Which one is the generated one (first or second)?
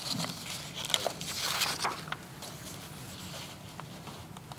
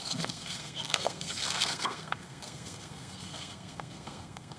second